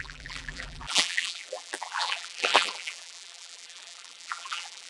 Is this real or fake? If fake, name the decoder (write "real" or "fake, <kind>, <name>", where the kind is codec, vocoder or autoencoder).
fake, vocoder, BigVGAN v2